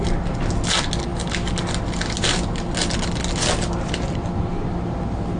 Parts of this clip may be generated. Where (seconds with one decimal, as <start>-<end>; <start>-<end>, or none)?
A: none